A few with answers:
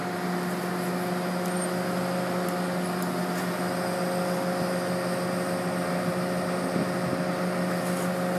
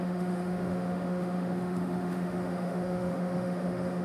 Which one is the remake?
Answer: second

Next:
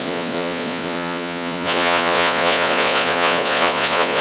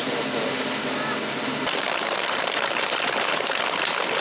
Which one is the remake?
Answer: first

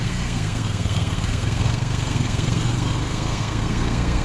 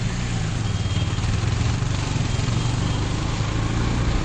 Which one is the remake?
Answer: first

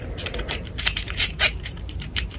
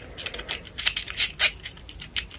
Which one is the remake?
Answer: first